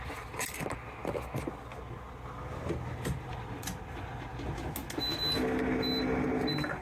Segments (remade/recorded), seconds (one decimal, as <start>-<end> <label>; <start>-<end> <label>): 0.0-6.8 recorded